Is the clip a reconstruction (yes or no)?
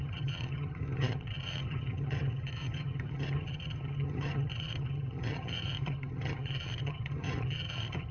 yes